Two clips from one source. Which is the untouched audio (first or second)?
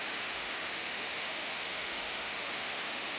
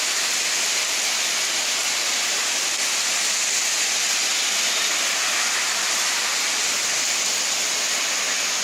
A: second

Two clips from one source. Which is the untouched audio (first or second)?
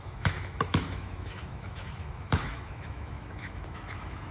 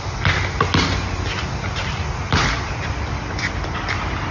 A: second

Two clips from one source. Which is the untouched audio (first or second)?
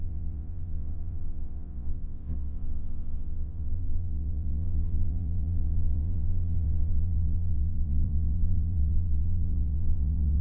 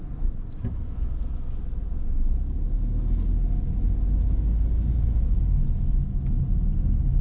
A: second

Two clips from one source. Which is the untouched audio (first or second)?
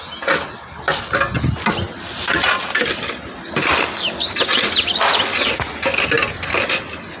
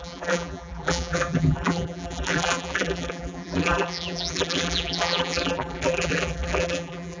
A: first